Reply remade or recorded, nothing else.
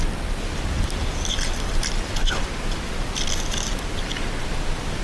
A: recorded